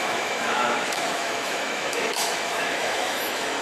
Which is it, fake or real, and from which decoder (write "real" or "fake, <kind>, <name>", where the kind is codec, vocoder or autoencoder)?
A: fake, autoencoder, DAC-VAE